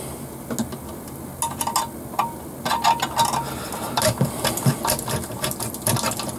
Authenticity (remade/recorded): recorded